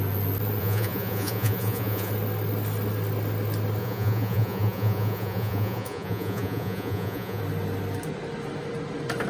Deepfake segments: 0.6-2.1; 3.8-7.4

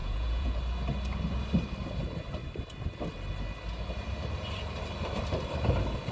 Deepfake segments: 0.0-0.6

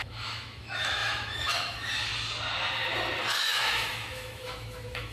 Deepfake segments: 0.0-2.1; 3.3-5.1

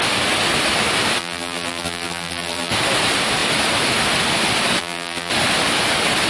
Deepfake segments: 1.2-2.7; 4.8-5.3

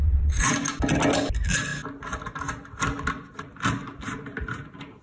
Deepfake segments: 0.0-0.5

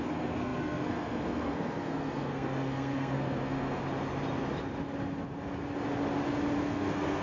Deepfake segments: 0.0-3.8; 6.6-7.2